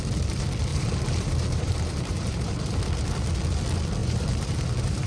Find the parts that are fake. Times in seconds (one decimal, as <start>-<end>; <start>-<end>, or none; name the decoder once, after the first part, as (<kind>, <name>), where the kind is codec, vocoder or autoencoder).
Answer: 0.7-2.8 (vocoder, BigVGAN v2); 4.0-5.1

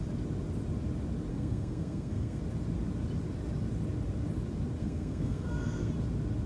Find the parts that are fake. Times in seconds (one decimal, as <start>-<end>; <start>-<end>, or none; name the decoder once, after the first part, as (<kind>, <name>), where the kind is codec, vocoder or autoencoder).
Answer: 1.3-2.4 (codec, SNAC); 4.8-5.9

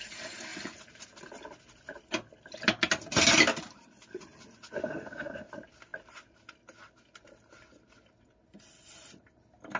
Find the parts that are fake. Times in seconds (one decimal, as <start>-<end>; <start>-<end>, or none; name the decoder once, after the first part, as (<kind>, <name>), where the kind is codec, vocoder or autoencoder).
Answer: 4.8-5.5 (autoencoder, DAC-VAE)

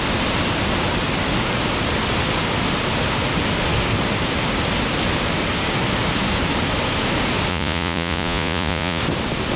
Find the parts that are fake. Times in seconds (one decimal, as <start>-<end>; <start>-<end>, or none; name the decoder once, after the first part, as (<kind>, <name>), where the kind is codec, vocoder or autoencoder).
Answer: 7.5-9.0 (vocoder, Vocos)

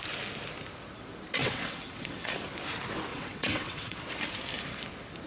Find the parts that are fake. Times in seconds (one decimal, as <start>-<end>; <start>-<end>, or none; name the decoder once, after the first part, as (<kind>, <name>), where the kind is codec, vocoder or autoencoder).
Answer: 1.4-2.3 (vocoder, WaveNeXt); 3.1-4.0

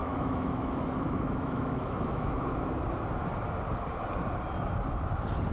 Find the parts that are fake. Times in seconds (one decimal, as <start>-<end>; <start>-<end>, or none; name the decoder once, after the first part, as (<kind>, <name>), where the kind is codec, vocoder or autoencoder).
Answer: 0.0-2.8 (autoencoder, DAC-VAE)

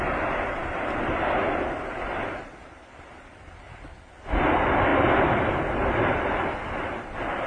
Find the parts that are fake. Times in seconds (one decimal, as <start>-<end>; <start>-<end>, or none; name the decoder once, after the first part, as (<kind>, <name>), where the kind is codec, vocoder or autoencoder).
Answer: none